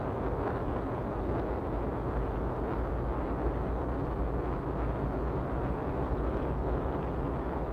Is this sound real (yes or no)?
yes